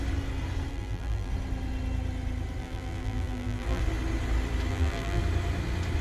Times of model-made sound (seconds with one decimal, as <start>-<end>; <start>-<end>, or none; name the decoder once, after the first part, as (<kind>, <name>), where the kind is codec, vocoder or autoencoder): 0.7-1.3 (vocoder, BigVGAN v2); 2.6-3.8; 4.7-5.2